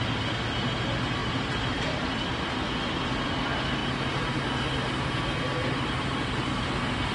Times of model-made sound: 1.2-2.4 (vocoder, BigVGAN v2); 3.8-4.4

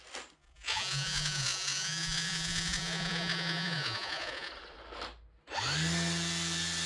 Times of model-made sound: 0.4-4.5 (vocoder, Vocos)

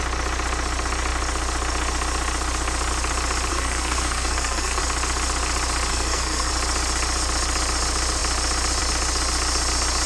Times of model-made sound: 3.5-4.8 (codec, SNAC); 5.9-6.5

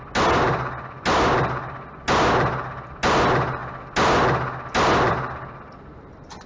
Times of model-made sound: none

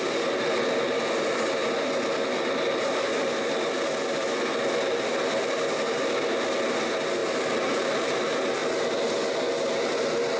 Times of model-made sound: 7.2-7.9 (vocoder, BigVGAN v2)

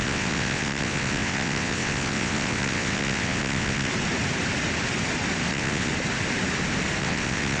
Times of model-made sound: 0.0-3.9 (vocoder, WaveNeXt); 5.5-5.9; 7.0-7.6

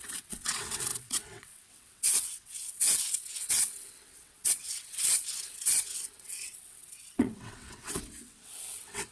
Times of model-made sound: 0.0-9.1 (vocoder, WaveNeXt)

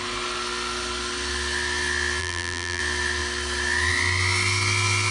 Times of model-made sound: 2.2-2.8 (vocoder, BigVGAN v2)